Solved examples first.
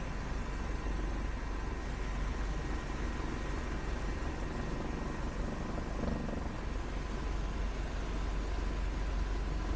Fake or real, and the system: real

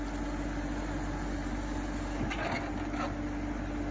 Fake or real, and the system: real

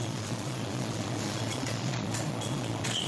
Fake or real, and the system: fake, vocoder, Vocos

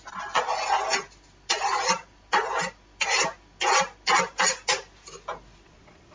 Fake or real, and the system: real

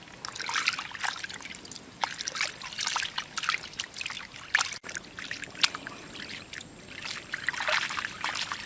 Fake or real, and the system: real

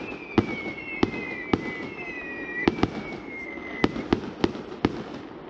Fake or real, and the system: real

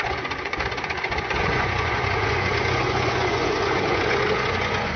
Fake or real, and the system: fake, vocoder, Vocos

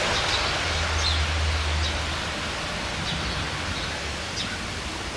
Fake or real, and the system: real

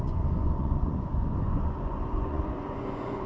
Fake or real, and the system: fake, vocoder, Vocos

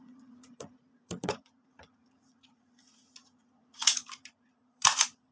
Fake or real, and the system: fake, vocoder, Vocos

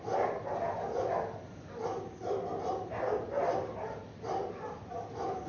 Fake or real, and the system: real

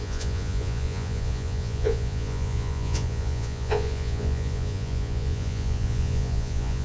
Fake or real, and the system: fake, vocoder, Vocos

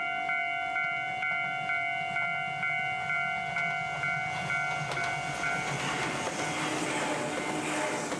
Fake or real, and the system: real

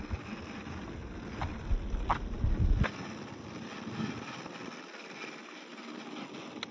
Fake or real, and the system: real